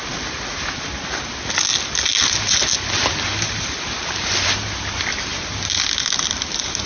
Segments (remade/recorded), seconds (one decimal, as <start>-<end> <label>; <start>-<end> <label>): 0.0-6.9 recorded